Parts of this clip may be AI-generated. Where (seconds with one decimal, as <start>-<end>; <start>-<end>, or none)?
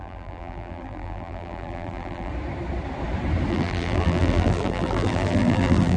0.0-2.3; 3.5-6.0